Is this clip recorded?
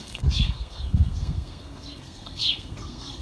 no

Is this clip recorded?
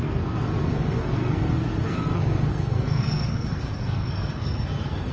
no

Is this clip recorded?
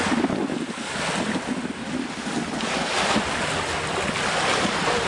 yes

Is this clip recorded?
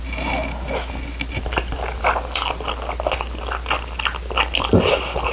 yes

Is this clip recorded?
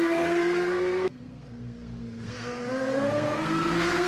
no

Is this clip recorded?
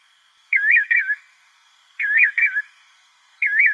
no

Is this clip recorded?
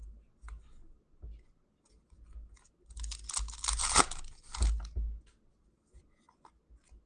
yes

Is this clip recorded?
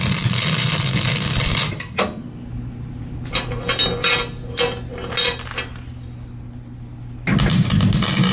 yes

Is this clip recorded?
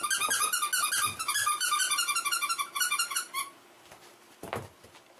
yes